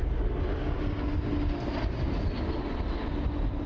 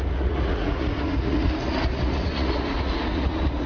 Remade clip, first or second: second